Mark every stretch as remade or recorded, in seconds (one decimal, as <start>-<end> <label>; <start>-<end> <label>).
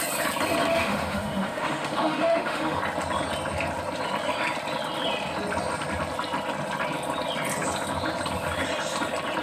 0.0-0.7 recorded; 0.7-2.8 remade; 2.8-9.4 recorded